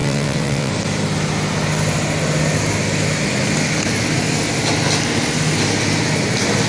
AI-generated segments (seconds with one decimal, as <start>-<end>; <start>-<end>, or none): 0.0-0.7

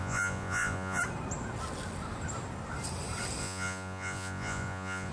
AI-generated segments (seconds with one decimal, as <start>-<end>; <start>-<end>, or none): 0.0-1.0; 3.4-5.1

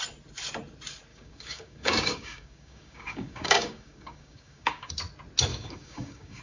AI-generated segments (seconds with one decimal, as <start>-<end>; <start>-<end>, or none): 1.1-4.9; 5.5-6.4

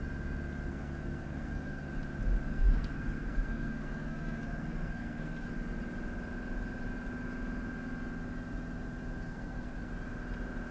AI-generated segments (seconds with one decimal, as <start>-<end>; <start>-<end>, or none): 0.7-1.9; 2.5-5.5; 9.3-9.9

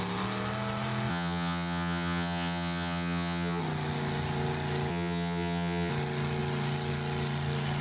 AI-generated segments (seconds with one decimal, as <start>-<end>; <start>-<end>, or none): 1.1-3.6; 4.9-5.9

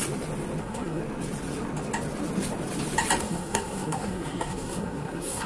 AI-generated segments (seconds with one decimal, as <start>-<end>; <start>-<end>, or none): 0.6-1.0; 3.2-5.5

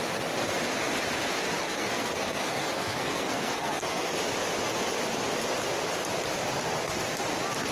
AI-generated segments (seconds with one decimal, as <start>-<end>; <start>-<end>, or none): 1.6-4.2